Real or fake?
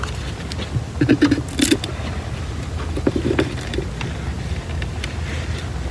real